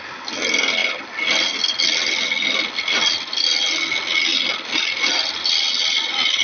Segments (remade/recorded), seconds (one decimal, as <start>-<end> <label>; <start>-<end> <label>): 0.0-0.8 recorded; 0.8-3.1 remade; 3.1-4.3 recorded; 4.3-6.0 remade; 6.0-6.4 recorded